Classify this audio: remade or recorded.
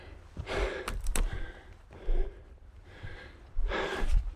remade